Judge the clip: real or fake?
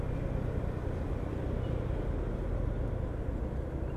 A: real